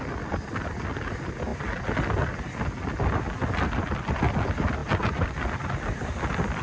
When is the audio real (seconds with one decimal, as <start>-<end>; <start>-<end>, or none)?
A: 0.0-6.6